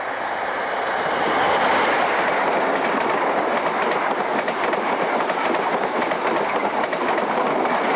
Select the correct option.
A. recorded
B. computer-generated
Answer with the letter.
A